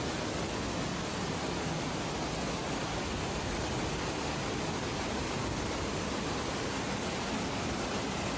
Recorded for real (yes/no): yes